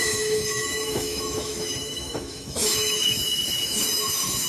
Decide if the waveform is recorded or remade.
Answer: remade